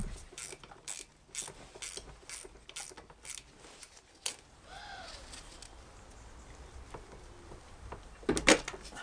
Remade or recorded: recorded